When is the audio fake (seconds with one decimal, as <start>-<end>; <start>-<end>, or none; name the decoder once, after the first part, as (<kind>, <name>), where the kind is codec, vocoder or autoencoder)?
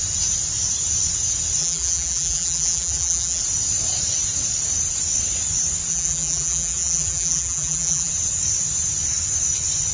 1.6-3.4 (vocoder, BigVGAN v2); 5.9-8.1